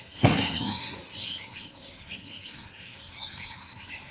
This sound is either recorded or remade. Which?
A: remade